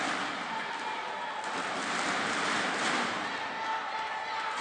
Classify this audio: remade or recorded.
recorded